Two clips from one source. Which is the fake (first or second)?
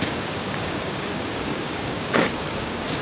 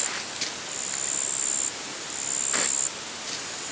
first